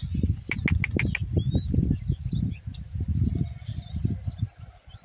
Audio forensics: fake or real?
real